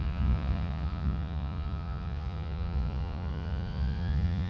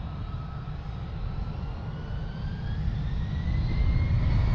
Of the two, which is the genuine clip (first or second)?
second